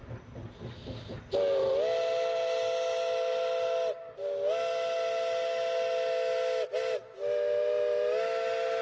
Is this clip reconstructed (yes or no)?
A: no